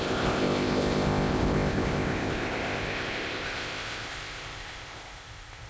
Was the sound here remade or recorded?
remade